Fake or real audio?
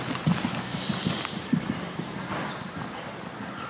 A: real